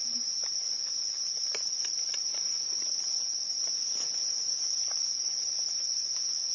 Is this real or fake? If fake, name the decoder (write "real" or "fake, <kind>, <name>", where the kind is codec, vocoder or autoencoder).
real